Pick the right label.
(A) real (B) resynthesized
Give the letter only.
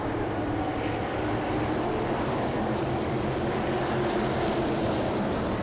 B